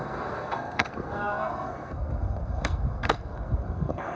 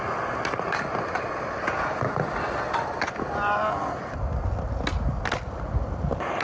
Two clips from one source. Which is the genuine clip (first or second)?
second